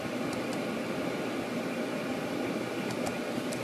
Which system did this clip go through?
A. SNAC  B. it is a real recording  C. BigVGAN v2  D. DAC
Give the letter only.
B